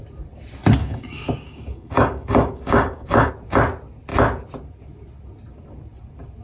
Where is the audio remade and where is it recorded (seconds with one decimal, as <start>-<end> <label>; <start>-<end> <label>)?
0.0-0.8 recorded; 0.8-3.3 remade; 3.3-6.4 recorded